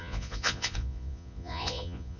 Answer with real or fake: fake